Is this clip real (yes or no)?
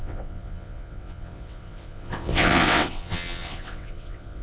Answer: no